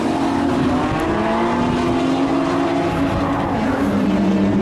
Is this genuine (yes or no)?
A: yes